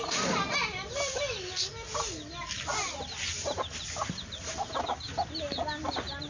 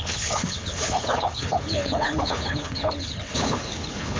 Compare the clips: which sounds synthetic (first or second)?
second